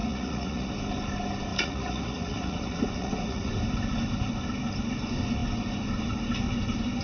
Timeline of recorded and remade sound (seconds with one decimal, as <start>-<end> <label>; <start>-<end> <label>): 0.0-0.7 remade; 0.7-1.5 recorded; 1.5-3.5 remade; 3.5-7.0 recorded